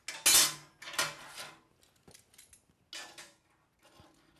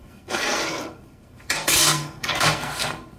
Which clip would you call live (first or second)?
first